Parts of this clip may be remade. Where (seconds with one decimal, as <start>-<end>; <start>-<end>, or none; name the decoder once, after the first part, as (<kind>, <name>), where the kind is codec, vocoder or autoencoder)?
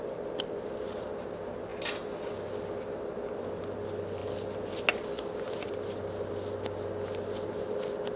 none